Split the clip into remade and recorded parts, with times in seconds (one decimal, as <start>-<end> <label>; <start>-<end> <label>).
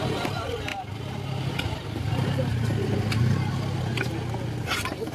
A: 0.0-5.1 recorded